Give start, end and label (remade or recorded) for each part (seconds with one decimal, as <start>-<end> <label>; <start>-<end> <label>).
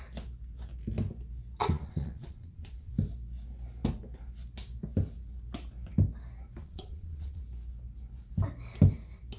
0.0-1.6 recorded; 1.6-2.9 remade; 2.9-6.6 recorded; 6.6-7.4 remade; 7.4-9.4 recorded